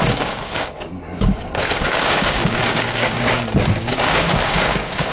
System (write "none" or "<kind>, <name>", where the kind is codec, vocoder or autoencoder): codec, DAC